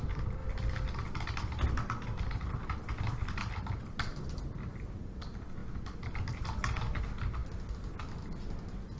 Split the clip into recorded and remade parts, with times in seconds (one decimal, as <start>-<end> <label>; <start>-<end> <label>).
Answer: 0.0-9.0 recorded